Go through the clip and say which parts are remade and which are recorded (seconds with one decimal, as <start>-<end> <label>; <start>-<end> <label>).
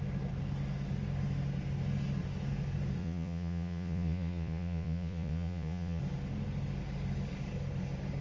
0.0-3.0 recorded; 3.0-6.0 remade; 6.0-8.2 recorded